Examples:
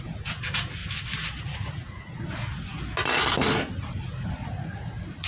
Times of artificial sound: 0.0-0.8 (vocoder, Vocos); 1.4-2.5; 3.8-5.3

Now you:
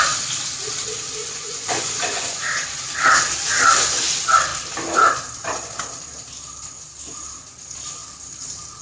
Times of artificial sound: 1.2-2.5 (vocoder, Vocos)

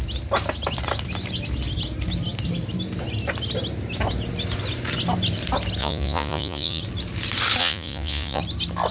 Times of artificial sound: 5.8-6.8 (vocoder, Vocos); 7.6-8.4

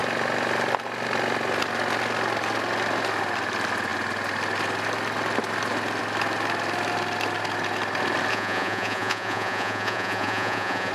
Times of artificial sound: 8.3-10.9 (vocoder, Vocos)

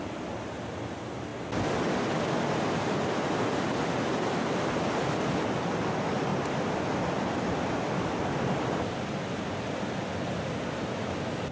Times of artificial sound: none

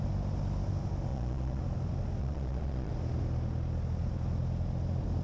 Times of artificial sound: 1.1-1.6 (vocoder, Vocos); 2.2-2.9

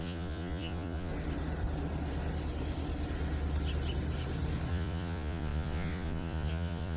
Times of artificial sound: 0.0-1.1 (vocoder, Vocos); 4.7-7.0

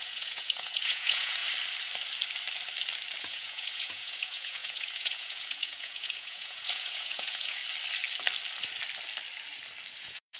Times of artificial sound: 0.0-1.4 (vocoder, Vocos); 3.2-7.6; 10.0-10.4